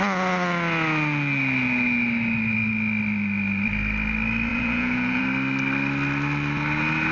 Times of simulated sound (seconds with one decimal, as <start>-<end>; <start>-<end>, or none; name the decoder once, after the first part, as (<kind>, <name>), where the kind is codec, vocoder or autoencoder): 4.5-5.2 (vocoder, Vocos)